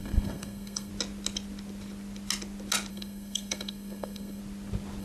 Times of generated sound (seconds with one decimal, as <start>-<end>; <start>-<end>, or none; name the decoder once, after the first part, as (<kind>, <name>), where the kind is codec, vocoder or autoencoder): 0.0-0.9 (codec, SNAC); 2.9-4.4